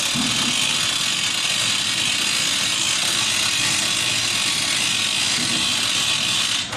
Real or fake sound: real